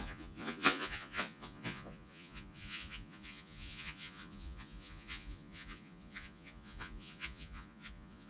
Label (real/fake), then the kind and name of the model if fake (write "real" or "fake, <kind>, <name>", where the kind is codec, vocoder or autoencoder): fake, vocoder, Vocos